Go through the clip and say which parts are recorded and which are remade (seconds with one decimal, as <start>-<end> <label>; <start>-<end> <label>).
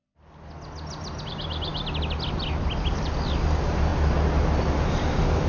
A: 0.0-5.5 recorded